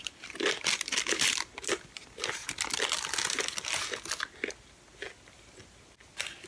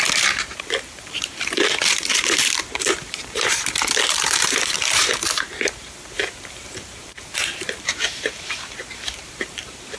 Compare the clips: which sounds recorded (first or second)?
first